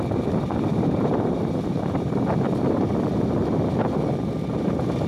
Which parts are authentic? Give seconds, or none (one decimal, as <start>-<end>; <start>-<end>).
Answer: 0.0-0.7; 2.9-5.1